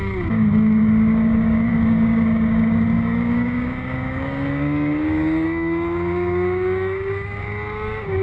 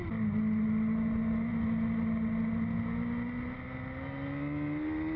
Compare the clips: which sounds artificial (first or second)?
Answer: first